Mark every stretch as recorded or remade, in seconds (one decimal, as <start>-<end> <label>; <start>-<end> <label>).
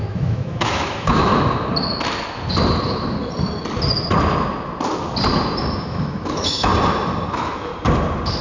0.0-1.3 remade; 1.3-5.8 recorded; 5.8-6.7 remade; 6.7-7.3 recorded; 7.3-7.7 remade; 7.7-8.4 recorded